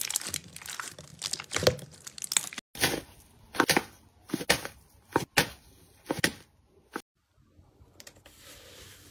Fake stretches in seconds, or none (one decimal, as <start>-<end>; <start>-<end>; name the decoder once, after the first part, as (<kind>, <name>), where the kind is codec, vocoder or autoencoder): none

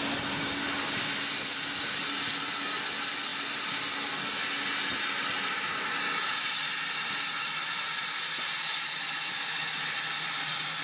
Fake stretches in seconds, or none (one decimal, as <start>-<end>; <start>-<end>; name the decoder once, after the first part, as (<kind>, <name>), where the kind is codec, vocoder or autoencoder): none